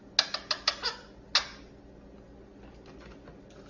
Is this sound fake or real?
real